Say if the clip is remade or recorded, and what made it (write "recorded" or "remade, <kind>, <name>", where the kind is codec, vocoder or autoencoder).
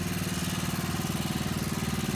recorded